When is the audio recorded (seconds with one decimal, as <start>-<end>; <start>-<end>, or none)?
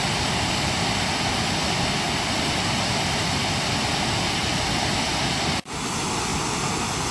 0.0-7.1